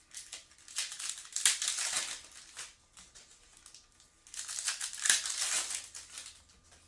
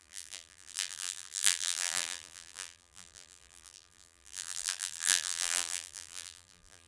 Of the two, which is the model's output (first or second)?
second